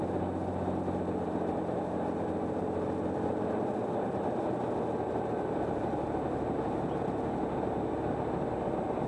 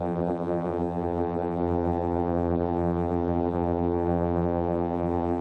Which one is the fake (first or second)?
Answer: second